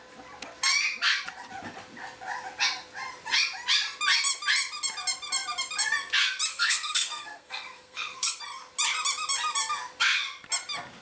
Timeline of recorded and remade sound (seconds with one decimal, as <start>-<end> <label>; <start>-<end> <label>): 0.0-6.5 recorded; 6.5-8.4 remade; 8.4-11.0 recorded